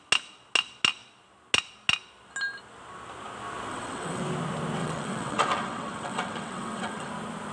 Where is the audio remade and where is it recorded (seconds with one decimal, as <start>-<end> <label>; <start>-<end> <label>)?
0.0-3.7 recorded; 3.7-4.2 remade; 4.2-4.8 recorded; 4.8-7.1 remade; 7.1-7.5 recorded